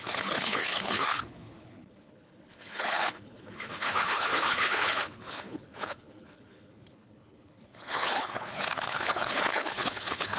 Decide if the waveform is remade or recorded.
remade